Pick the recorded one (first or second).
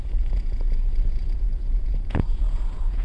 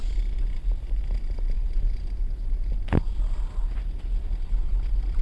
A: second